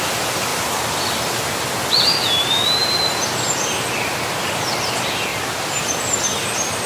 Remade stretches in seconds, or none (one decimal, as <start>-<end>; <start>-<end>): 0.5-1.4; 5.3-6.0